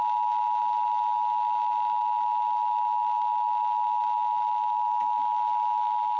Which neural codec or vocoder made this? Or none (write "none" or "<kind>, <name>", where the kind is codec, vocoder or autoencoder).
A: none